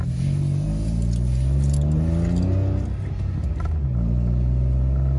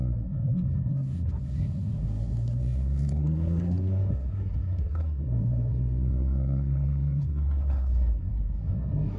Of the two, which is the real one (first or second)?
first